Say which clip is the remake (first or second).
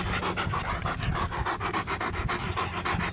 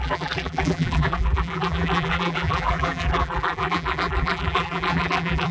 second